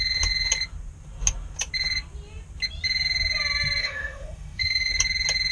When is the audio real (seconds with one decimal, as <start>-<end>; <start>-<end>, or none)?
0.0-3.8; 4.9-5.5